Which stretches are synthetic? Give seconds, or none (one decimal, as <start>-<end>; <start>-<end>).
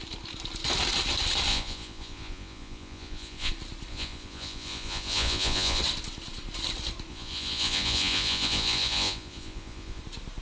1.5-3.5; 3.9-5.8; 7.1-10.0